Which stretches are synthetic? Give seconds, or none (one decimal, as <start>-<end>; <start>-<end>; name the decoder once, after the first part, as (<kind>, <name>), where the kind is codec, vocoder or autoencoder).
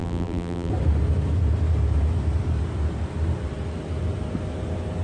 0.0-0.7 (vocoder, BigVGAN v2)